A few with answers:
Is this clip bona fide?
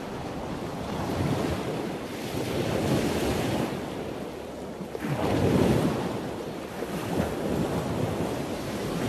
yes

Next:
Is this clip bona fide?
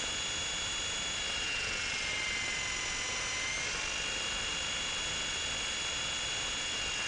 yes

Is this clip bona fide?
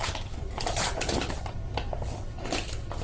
yes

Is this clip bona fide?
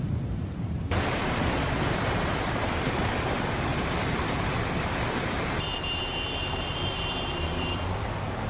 no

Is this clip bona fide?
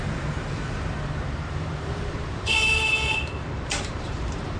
no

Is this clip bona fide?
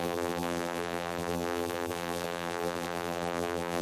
no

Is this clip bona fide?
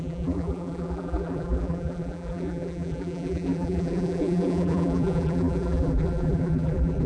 no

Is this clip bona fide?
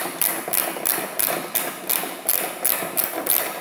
yes